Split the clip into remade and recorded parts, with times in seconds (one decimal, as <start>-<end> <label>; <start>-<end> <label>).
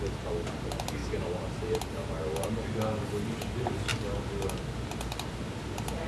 0.0-6.1 recorded